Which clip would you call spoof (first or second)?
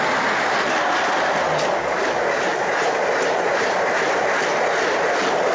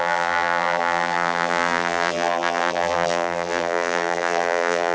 second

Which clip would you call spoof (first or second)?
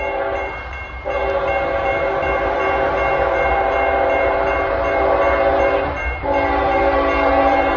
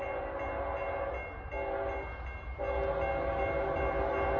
first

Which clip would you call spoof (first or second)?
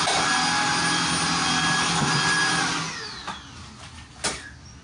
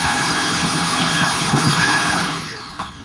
second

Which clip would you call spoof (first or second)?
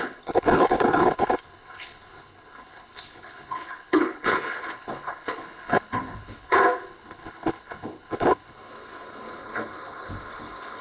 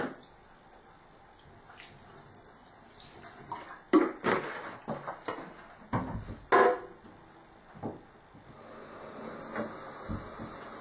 first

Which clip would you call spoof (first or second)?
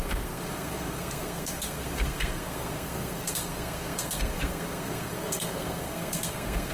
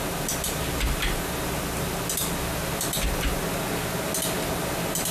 first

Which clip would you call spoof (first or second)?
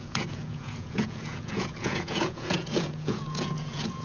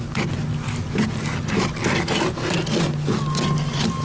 first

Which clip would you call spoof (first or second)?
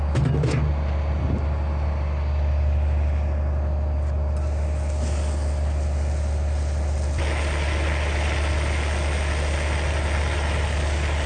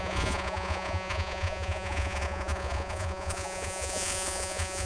second